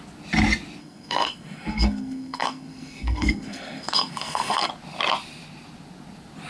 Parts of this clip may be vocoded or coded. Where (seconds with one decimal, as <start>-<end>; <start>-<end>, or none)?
0.8-4.7